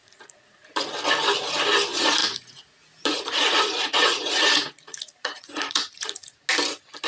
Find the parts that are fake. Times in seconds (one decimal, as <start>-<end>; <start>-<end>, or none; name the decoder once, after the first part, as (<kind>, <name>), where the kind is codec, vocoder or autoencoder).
0.0-0.8 (vocoder, Vocos); 2.2-6.5